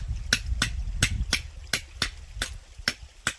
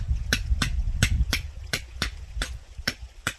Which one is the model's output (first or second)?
second